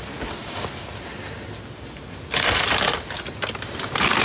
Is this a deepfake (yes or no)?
no